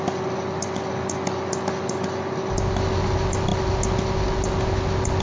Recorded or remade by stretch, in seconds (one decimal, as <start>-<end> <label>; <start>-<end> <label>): 0.0-5.2 recorded